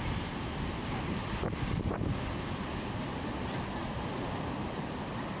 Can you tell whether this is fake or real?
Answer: real